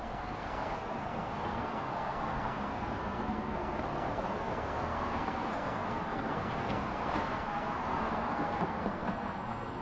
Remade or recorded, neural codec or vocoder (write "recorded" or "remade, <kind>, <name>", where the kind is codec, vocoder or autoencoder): remade, codec, SNAC